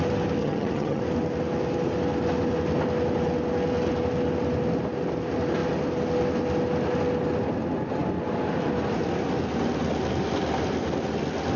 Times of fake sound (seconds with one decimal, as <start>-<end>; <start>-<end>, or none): 0.4-1.0